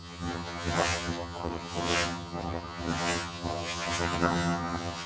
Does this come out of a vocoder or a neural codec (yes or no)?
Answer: yes